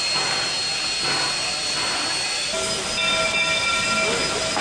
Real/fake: real